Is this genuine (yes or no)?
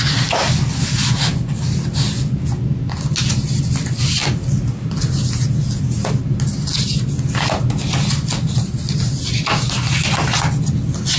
yes